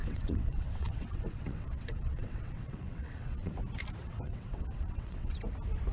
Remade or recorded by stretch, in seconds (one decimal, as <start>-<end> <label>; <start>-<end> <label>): 0.0-3.5 remade; 3.5-4.0 recorded; 4.0-5.4 remade; 5.4-5.9 recorded